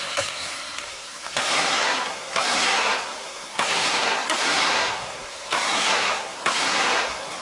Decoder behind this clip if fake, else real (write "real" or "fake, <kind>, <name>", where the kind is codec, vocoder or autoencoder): fake, codec, SNAC